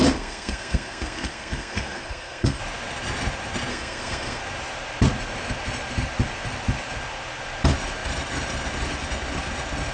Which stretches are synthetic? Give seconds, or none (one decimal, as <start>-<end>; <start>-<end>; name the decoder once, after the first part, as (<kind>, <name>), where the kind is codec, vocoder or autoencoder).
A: 0.0-2.6 (codec, SNAC); 3.7-4.4